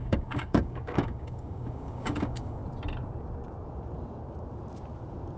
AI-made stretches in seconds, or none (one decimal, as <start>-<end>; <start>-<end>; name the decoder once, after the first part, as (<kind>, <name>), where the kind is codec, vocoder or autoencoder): 0.0-2.6 (codec, DAC)